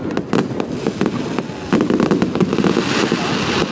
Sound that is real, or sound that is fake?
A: real